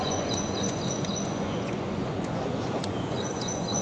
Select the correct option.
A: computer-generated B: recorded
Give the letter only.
A